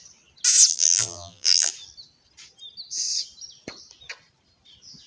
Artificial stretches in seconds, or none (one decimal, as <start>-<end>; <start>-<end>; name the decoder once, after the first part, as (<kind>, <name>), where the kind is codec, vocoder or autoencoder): 0.7-1.7 (vocoder, BigVGAN v2)